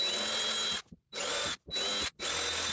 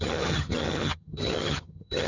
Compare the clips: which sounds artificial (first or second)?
second